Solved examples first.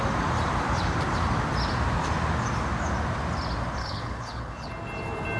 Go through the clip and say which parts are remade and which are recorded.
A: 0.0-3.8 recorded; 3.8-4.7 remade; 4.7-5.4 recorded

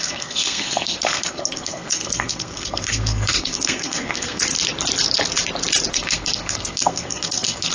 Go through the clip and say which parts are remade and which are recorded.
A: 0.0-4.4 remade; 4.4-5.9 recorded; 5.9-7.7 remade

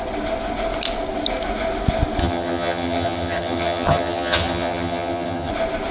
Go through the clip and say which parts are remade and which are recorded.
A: 0.0-2.2 recorded; 2.2-5.5 remade; 5.5-5.9 recorded

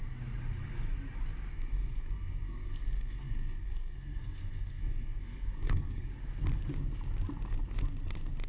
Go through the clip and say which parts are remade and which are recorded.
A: 0.0-1.5 recorded; 1.5-6.1 remade; 6.1-8.5 recorded

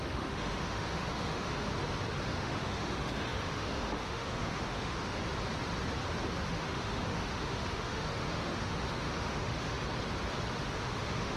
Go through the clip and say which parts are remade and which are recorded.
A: 0.0-1.7 remade; 1.7-2.2 recorded; 2.2-5.2 remade; 5.2-6.4 recorded; 6.4-9.8 remade; 9.8-10.5 recorded; 10.5-11.4 remade

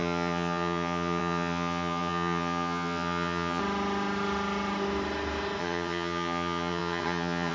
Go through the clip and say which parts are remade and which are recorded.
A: 0.0-3.6 remade; 3.6-5.6 recorded; 5.6-7.5 remade